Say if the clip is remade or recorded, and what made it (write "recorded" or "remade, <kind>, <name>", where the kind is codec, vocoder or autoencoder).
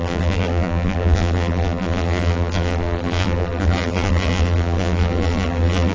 remade, vocoder, BigVGAN v2